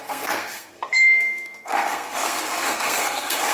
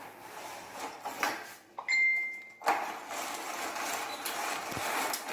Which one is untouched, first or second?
second